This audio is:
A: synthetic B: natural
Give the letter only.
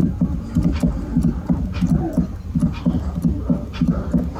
B